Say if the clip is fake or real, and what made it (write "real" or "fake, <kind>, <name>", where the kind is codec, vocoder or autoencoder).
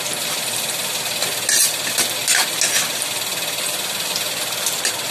real